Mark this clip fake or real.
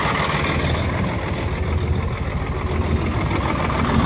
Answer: real